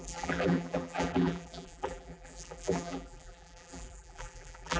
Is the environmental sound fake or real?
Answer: fake